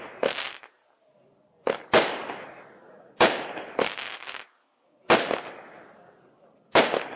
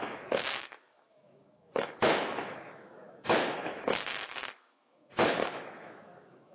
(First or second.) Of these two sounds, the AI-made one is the second